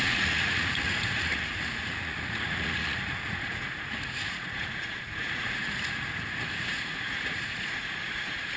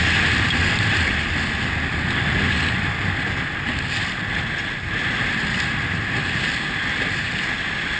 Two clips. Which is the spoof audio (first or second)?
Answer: first